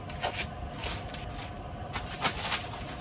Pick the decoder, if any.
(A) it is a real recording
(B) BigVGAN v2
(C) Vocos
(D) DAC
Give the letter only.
A